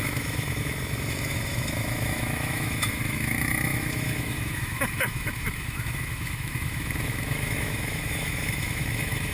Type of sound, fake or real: fake